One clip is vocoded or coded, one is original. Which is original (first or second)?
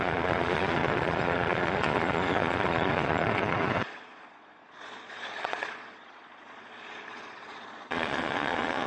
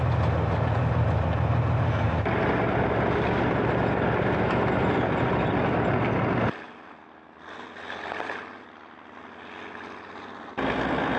second